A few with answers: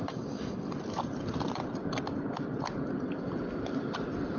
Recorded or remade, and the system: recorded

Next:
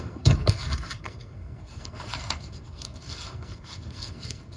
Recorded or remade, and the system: remade, codec, SNAC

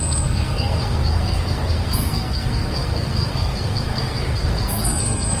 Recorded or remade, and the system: remade, codec, SNAC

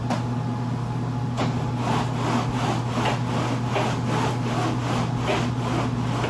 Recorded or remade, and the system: recorded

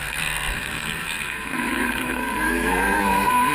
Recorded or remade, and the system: remade, codec, SNAC